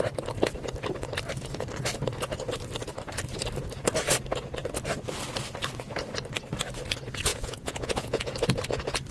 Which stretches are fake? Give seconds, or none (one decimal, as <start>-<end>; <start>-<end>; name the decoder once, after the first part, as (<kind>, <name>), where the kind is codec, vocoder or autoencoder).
7.3-8.3 (vocoder, Vocos)